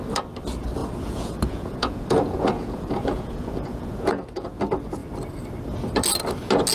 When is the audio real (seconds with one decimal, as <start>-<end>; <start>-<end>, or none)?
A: 0.0-0.8; 4.6-6.7